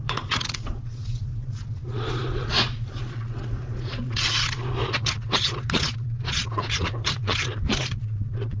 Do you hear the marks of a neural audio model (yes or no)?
yes